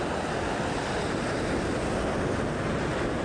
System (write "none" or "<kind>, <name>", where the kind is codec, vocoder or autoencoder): none